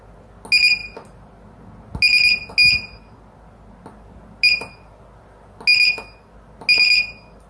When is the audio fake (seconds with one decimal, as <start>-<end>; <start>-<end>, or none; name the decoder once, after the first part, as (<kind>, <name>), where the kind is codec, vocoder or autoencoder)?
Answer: none